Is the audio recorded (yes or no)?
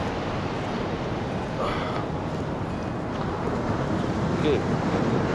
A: yes